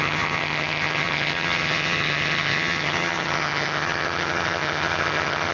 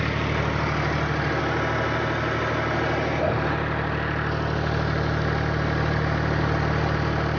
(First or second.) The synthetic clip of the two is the first